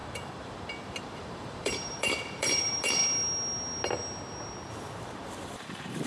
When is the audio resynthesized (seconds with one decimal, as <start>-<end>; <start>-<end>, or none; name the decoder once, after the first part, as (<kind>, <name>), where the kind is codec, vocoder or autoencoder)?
0.0-3.0 (vocoder, BigVGAN v2); 4.7-6.1